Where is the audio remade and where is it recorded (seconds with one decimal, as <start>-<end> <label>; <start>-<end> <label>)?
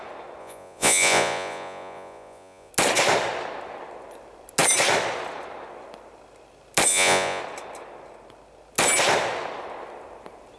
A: 0.0-0.4 recorded; 0.4-2.7 remade; 2.7-6.9 recorded; 6.9-7.4 remade; 7.4-10.6 recorded